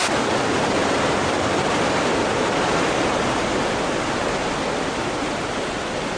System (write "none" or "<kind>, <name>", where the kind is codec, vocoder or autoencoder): none